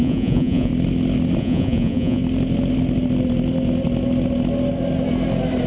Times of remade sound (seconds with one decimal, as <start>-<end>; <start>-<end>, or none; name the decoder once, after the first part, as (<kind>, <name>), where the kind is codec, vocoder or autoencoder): 0.0-0.7 (vocoder, Vocos); 1.4-2.2